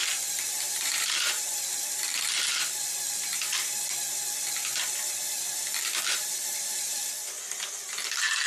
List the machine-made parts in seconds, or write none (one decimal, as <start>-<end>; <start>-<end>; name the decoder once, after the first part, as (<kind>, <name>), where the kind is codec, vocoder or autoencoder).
0.0-1.4 (vocoder, BigVGAN v2); 6.5-7.1